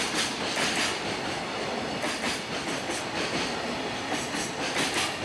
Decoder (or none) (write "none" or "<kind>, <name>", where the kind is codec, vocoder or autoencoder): none